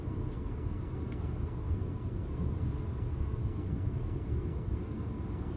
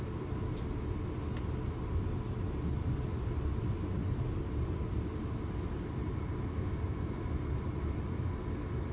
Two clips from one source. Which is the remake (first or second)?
first